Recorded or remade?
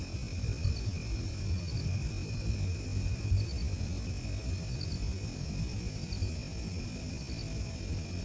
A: recorded